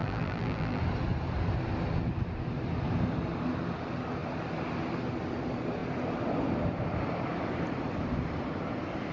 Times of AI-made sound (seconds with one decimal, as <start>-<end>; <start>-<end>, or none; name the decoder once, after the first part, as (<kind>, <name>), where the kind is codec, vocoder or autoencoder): 0.0-0.8 (vocoder, BigVGAN v2)